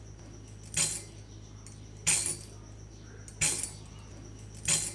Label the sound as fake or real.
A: real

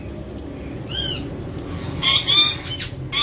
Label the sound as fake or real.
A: real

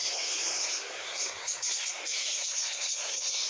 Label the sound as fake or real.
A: fake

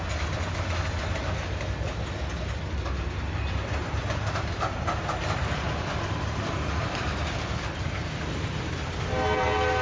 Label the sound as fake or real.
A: real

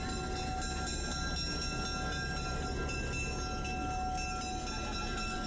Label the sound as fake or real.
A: real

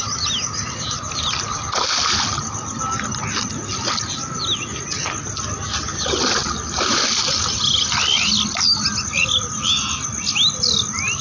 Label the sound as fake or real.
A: real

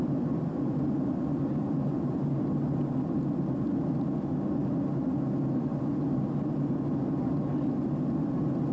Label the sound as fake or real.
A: real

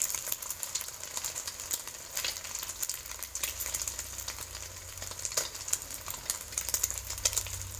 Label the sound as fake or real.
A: real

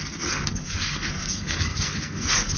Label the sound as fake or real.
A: fake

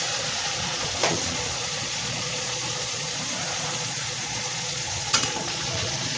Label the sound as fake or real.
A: fake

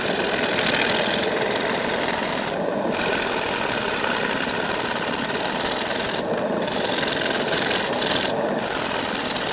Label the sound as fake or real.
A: real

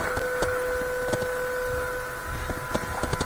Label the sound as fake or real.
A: real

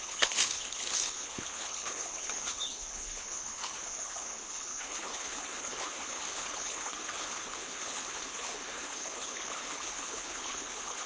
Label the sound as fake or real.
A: fake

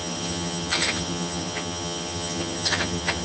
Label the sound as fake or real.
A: fake